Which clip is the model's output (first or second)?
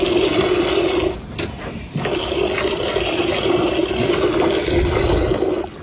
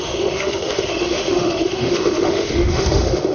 second